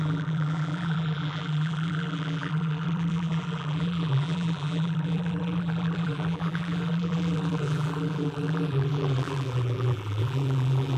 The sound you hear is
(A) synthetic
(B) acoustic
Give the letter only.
A